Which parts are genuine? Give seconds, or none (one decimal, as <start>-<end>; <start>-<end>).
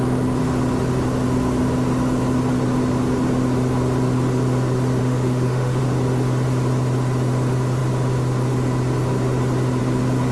0.0-5.0; 5.8-10.3